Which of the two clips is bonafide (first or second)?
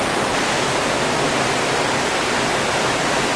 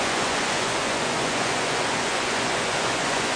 first